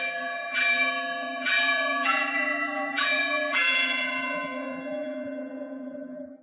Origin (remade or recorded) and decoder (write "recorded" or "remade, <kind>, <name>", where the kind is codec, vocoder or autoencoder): remade, vocoder, BigVGAN v2